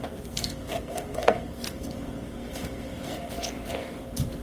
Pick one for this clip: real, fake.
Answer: fake